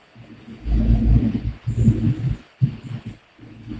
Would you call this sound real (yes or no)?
no